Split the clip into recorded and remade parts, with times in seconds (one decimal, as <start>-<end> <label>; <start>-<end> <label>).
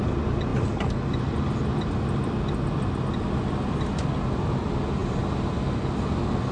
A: 0.0-6.5 recorded